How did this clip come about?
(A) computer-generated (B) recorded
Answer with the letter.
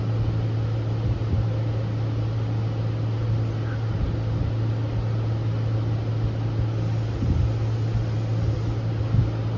B